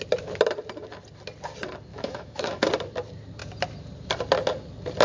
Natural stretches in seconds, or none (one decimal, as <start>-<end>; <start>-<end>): 0.0-1.9; 2.7-5.0

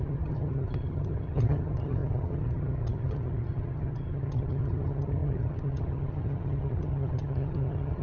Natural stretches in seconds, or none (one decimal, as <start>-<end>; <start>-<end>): none

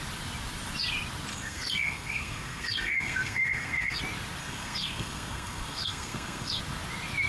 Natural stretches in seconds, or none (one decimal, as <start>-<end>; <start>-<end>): 0.0-1.3; 4.0-4.4; 6.6-7.3

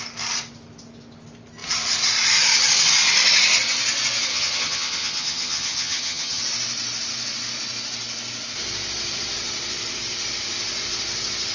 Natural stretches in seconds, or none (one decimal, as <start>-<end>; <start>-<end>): 0.0-4.3; 6.4-11.5